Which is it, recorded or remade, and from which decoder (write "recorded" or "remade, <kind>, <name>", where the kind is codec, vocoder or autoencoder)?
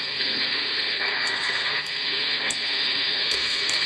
remade, codec, SNAC